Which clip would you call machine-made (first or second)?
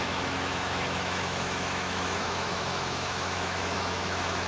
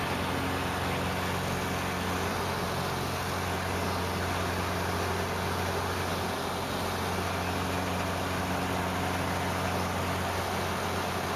first